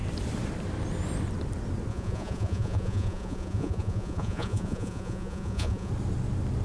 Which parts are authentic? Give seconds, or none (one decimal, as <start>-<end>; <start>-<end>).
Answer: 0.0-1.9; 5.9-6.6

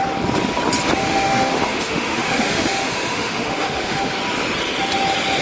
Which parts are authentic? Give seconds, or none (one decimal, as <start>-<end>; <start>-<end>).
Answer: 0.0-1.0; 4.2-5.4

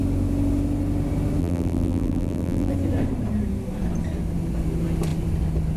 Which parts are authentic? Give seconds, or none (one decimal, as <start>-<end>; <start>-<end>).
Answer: 0.0-1.4; 2.7-5.8

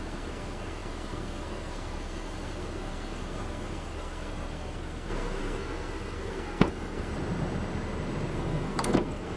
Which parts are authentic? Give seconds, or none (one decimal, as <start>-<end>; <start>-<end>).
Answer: 7.1-8.3

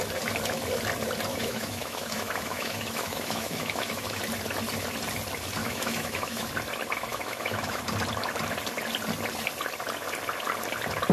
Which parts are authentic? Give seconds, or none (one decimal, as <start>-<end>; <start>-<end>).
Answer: 0.0-1.3; 4.2-5.6; 6.5-7.1; 7.8-11.1

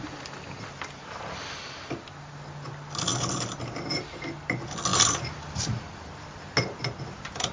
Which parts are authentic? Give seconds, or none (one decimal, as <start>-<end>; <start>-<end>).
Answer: 0.0-7.5

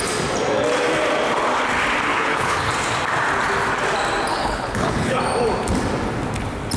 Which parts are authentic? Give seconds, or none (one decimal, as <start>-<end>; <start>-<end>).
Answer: 0.0-2.1; 2.7-4.3; 5.2-6.8